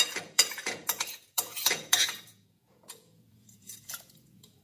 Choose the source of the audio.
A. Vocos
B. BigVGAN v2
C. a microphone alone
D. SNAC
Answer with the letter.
A